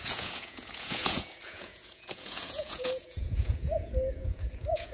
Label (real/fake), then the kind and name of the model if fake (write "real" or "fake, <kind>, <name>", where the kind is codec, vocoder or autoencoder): fake, vocoder, Vocos